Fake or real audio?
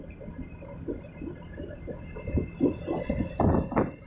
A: real